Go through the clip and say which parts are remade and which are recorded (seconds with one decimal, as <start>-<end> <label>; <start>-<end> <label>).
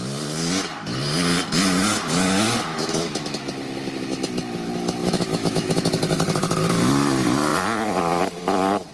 0.0-2.7 recorded; 2.7-3.4 remade; 3.4-5.0 recorded; 5.0-5.9 remade; 5.9-8.9 recorded